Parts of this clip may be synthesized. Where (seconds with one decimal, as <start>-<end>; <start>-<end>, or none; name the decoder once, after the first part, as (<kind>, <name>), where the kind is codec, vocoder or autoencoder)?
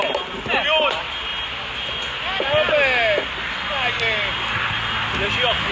none